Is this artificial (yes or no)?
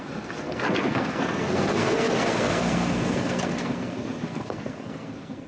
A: yes